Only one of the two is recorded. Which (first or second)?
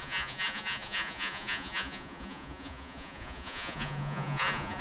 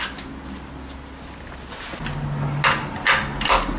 second